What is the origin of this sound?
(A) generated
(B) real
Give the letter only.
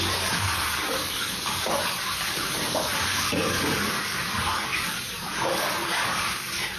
A